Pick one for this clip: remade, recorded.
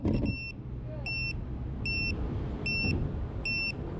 recorded